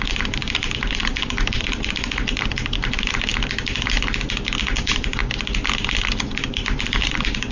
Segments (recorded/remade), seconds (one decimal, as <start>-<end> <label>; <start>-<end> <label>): 0.0-3.3 remade; 3.3-4.8 recorded; 4.8-5.2 remade; 5.2-6.2 recorded; 6.2-7.5 remade